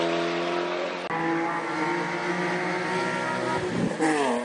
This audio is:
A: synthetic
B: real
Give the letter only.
B